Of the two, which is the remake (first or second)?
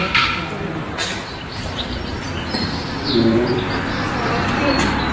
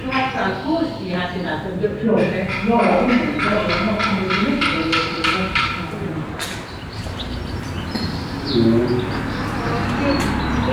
first